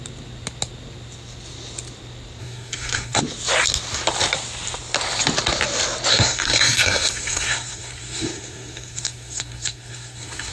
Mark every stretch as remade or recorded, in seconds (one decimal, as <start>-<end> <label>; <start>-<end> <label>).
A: 0.0-2.4 recorded; 2.4-3.2 remade; 3.2-6.1 recorded; 6.1-10.5 remade